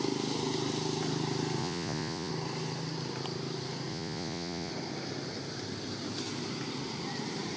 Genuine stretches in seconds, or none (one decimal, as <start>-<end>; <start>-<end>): 0.0-1.6; 2.3-3.9; 4.7-7.6